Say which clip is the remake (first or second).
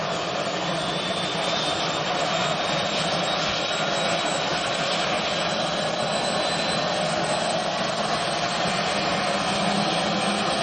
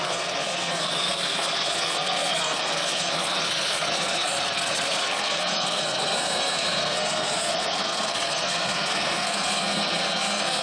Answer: second